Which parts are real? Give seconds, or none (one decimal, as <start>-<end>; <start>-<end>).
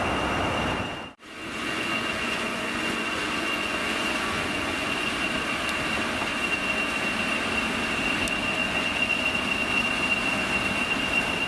0.0-1.4; 5.1-8.6; 9.2-11.5